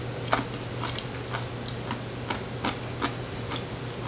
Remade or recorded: recorded